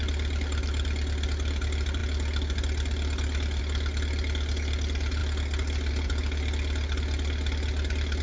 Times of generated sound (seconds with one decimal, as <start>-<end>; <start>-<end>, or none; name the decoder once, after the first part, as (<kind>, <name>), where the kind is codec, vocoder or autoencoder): none